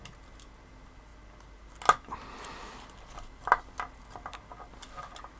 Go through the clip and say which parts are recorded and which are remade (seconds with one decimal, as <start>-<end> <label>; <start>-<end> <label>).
0.0-5.4 recorded